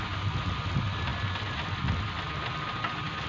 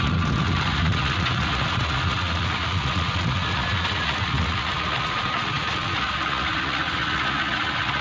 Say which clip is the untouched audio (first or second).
first